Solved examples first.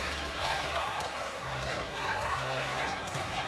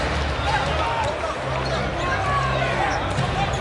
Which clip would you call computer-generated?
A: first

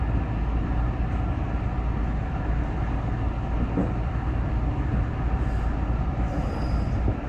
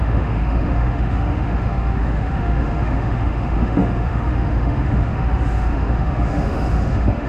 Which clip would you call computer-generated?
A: second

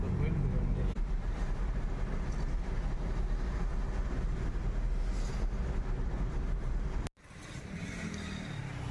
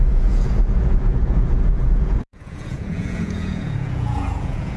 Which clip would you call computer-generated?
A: second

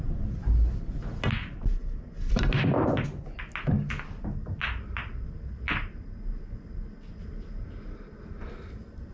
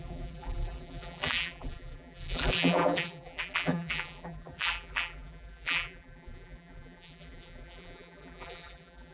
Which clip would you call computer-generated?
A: second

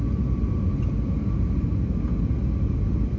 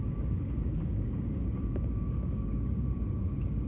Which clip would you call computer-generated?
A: second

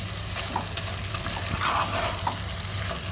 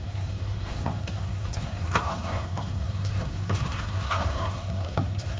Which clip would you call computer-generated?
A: second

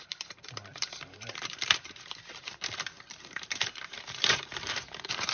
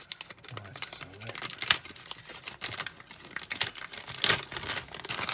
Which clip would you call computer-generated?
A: first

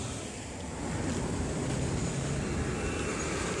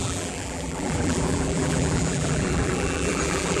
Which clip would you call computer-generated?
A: second